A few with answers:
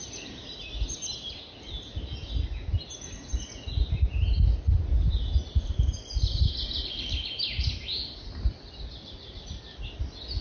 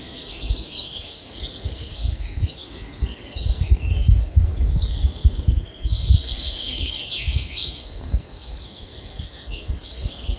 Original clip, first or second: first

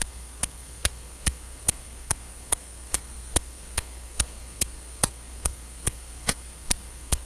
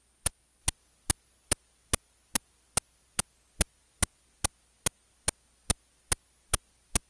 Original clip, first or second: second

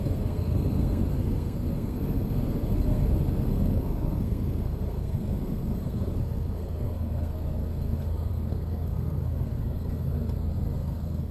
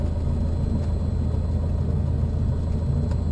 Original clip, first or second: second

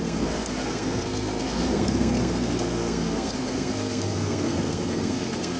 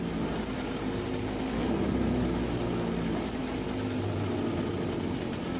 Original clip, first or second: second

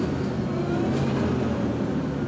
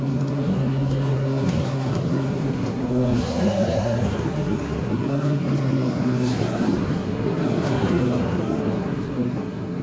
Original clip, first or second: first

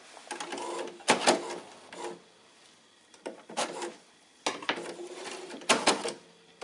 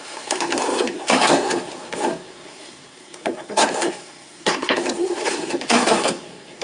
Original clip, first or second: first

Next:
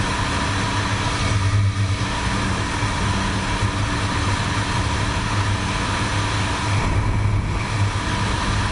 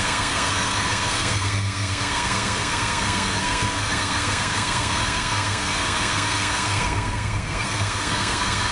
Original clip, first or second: first